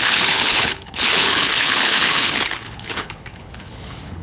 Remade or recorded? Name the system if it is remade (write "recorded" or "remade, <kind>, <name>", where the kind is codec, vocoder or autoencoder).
remade, codec, HILCodec